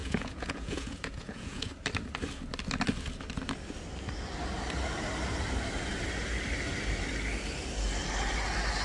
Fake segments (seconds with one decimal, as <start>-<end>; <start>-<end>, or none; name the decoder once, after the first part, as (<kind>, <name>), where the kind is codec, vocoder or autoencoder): 0.0-1.7 (vocoder, Vocos)